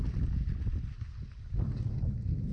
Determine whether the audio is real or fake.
real